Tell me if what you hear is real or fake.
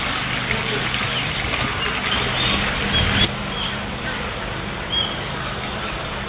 real